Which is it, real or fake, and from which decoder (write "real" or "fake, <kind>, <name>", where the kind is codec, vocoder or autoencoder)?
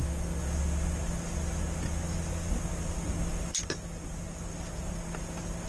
real